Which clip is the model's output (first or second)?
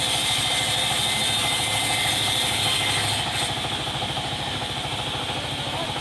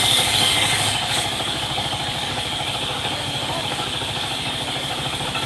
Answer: second